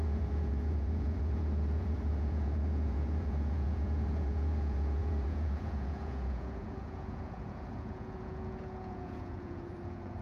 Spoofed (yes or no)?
yes